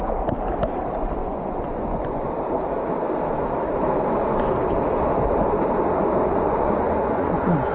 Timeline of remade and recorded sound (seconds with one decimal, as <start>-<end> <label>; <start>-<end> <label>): 0.0-1.2 recorded; 1.2-2.3 remade; 2.3-6.3 recorded; 6.3-7.7 remade